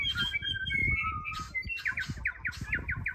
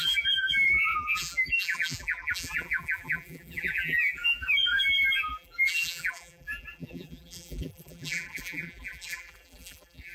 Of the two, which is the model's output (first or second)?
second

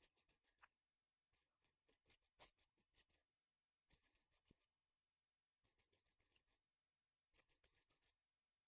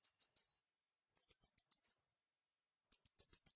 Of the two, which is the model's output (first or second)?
first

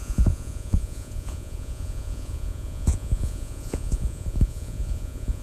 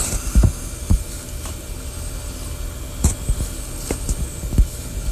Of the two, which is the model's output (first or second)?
first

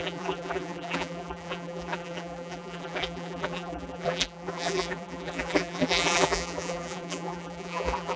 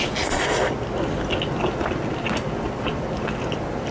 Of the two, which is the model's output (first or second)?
first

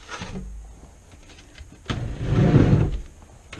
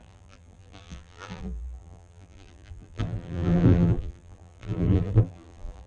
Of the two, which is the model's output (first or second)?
second